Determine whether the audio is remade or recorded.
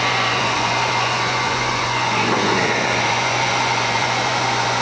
remade